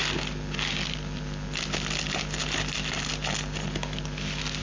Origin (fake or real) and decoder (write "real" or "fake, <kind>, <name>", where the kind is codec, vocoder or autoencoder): real